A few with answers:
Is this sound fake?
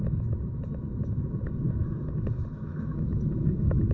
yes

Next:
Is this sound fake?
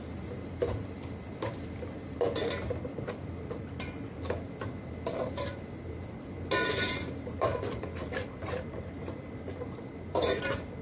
yes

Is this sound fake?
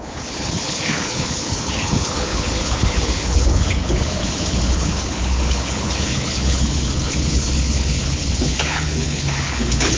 yes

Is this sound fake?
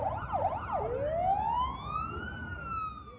no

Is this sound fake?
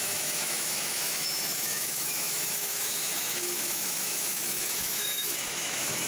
yes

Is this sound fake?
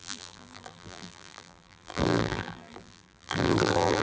yes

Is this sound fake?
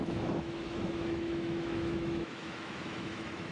yes